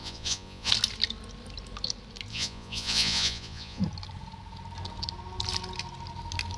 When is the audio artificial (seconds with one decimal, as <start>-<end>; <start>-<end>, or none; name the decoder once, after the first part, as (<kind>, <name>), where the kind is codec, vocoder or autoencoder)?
0.0-0.7 (vocoder, Vocos); 2.3-3.8